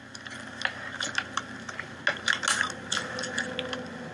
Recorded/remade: recorded